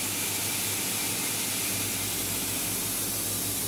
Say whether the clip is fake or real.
real